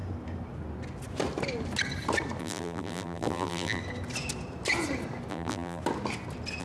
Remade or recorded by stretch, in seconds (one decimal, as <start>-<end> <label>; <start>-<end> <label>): 0.0-2.4 recorded; 2.4-3.8 remade; 3.8-5.3 recorded; 5.3-5.8 remade; 5.8-6.6 recorded